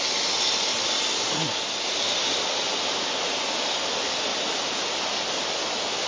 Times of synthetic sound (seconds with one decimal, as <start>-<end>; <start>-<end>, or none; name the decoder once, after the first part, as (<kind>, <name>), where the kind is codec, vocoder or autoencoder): none